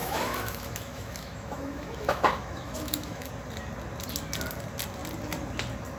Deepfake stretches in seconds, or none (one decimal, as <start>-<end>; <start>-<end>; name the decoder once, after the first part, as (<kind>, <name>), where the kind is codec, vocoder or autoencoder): 0.0-3.3 (autoencoder, DAC-VAE)